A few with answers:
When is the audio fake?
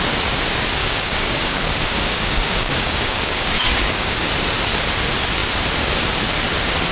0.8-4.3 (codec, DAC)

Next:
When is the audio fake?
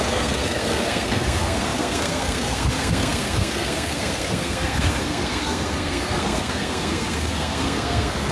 0.0-8.3 (codec, SNAC)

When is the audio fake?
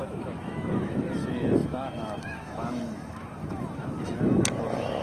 0.0-5.0 (autoencoder, DAC-VAE)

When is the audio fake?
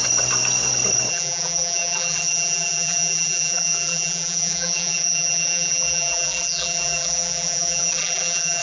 1.1-8.6 (vocoder, BigVGAN v2)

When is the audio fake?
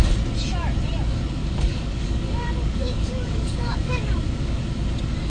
1.4-4.6 (codec, DAC)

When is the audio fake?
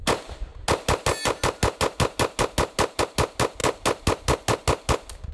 none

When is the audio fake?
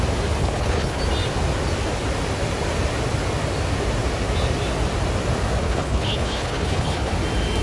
0.4-1.0 (codec, HILCodec); 5.6-7.1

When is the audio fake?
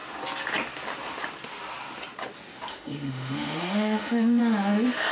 2.7-4.4 (autoencoder, DAC-VAE)